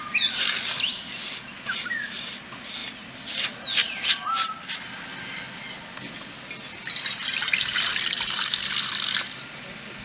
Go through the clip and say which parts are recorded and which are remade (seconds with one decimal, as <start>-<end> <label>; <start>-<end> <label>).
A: 0.0-2.8 remade; 2.8-6.7 recorded; 6.7-7.9 remade; 7.9-9.2 recorded; 9.2-10.0 remade